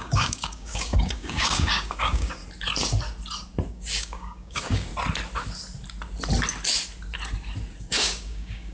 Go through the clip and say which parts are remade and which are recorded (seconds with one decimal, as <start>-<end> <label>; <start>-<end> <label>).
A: 0.0-2.4 remade; 2.4-3.7 recorded; 3.7-4.9 remade; 4.9-7.8 recorded; 7.8-8.7 remade